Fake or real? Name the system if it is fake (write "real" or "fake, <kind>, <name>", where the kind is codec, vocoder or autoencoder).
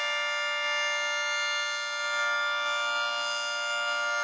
real